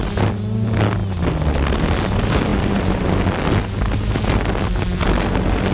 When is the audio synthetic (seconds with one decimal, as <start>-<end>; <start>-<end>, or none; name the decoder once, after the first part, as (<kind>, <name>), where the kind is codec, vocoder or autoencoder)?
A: none